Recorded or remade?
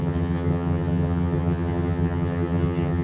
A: remade